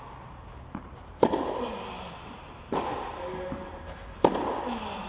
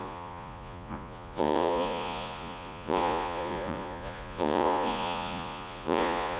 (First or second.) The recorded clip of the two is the first